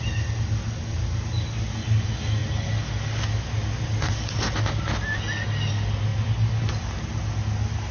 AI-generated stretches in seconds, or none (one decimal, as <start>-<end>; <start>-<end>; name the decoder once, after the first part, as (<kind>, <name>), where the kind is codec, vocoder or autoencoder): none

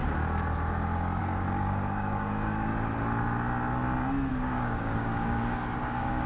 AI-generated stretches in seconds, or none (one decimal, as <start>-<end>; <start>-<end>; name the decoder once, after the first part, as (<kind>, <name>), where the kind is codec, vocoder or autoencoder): 1.2-2.7 (codec, DAC); 4.3-6.3

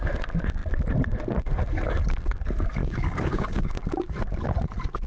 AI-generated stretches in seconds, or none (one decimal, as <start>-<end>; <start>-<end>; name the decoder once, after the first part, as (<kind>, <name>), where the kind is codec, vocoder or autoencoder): 2.8-3.8 (codec, DAC)

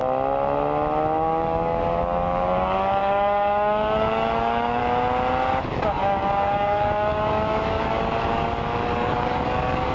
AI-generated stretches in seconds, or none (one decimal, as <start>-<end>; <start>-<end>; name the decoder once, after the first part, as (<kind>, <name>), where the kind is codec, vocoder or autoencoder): 1.2-4.8 (codec, DAC); 5.6-9.9

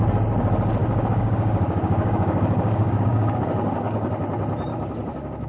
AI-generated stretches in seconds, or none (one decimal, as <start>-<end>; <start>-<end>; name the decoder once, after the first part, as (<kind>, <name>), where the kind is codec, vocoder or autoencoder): 0.8-4.1 (codec, DAC); 4.7-5.5